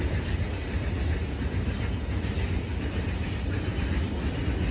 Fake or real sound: real